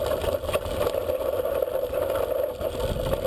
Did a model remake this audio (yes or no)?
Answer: no